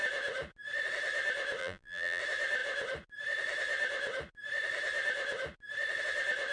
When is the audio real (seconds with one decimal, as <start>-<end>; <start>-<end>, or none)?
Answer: 0.0-1.6; 2.2-6.5